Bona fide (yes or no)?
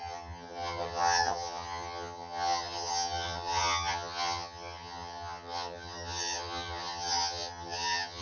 no